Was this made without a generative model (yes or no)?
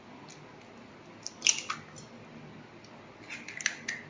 yes